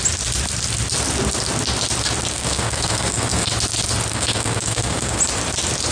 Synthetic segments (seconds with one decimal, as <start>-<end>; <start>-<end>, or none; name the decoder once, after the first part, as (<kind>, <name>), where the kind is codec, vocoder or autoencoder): 2.3-3.5 (codec, SNAC); 4.1-5.2